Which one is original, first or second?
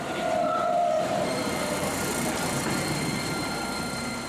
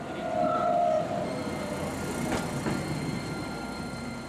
second